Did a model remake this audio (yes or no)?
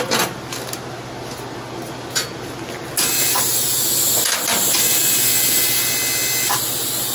no